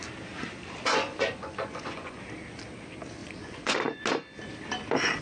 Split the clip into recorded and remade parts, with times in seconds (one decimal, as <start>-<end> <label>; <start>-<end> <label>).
0.0-0.9 recorded; 0.9-2.2 remade; 2.2-3.2 recorded; 3.2-4.0 remade; 4.0-5.2 recorded

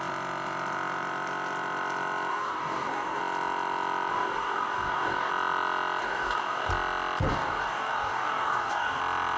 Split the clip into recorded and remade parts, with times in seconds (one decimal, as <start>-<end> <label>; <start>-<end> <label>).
0.0-2.3 recorded; 2.3-3.2 remade; 3.2-4.1 recorded; 4.1-5.3 remade; 5.3-6.0 recorded; 6.0-6.7 remade; 6.7-7.3 recorded; 7.3-9.0 remade; 9.0-9.4 recorded

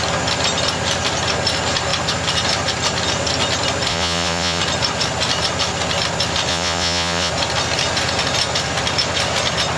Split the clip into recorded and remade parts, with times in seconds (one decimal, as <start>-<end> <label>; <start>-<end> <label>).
0.0-3.9 recorded; 3.9-4.6 remade; 4.6-6.5 recorded; 6.5-7.3 remade; 7.3-9.8 recorded

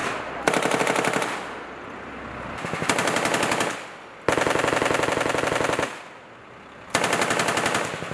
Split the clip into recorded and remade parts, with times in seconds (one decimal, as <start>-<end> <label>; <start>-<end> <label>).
0.0-8.1 recorded

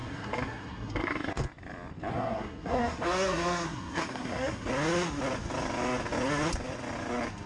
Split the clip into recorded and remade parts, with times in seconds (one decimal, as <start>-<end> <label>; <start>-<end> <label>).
0.0-1.3 remade; 1.3-2.1 recorded; 2.1-4.7 remade; 4.7-7.5 recorded

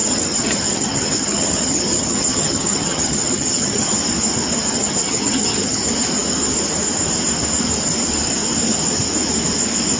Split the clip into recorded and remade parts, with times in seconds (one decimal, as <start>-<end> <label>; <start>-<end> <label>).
0.0-4.0 remade; 4.0-4.7 recorded; 4.7-5.8 remade; 5.8-10.0 recorded

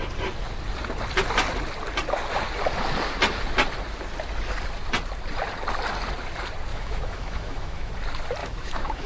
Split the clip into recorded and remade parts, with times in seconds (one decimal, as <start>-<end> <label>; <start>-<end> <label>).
0.0-6.7 recorded; 6.7-7.9 remade; 7.9-8.4 recorded; 8.4-9.1 remade